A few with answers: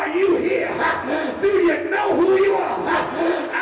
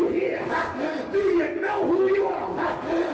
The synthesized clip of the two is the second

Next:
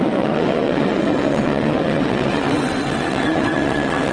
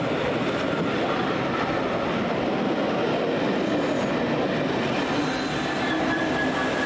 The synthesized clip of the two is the first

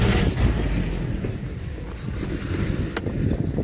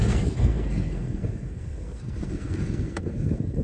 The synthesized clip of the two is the second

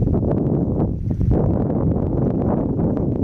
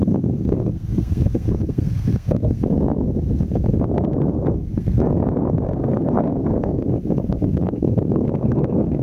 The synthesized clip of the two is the second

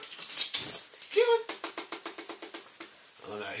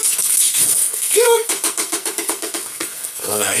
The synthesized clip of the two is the second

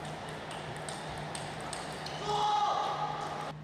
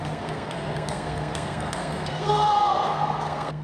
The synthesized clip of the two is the second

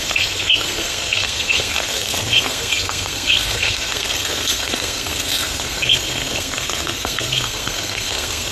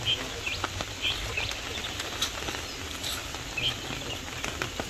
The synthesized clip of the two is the first